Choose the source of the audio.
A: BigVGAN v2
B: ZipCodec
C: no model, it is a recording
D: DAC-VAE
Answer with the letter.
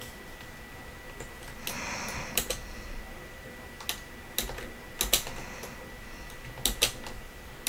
C